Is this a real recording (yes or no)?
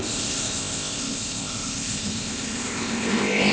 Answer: no